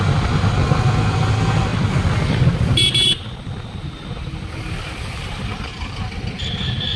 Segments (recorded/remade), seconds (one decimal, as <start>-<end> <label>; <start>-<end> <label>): 0.0-1.7 recorded; 1.7-4.5 remade; 4.5-5.7 recorded; 5.7-7.0 remade